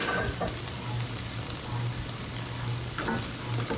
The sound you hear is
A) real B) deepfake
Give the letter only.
A